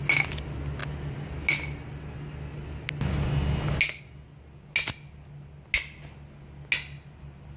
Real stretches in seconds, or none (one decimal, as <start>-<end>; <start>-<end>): 0.0-7.6